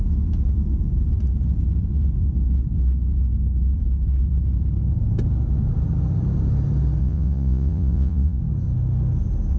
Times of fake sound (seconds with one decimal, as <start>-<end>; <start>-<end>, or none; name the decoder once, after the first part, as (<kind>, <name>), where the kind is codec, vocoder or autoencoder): 7.0-8.4 (vocoder, Vocos)